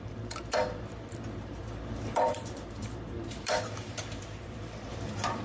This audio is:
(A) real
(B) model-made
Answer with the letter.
B